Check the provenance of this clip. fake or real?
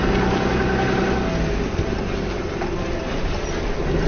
real